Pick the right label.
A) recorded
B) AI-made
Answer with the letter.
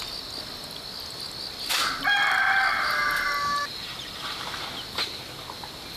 A